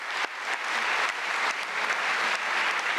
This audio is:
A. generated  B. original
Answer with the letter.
B